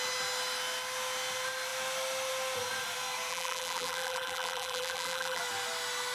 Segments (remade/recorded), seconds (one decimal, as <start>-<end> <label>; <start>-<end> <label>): 0.0-3.3 recorded; 3.3-5.4 remade; 5.4-6.1 recorded